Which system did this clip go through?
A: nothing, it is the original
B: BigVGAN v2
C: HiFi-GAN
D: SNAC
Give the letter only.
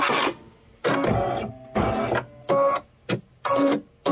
A